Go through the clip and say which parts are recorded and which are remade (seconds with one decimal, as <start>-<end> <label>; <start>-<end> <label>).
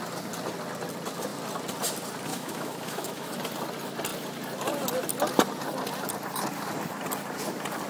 0.0-2.3 recorded; 2.3-3.3 remade; 3.3-7.9 recorded